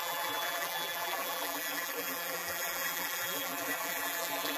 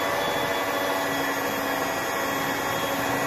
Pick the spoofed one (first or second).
first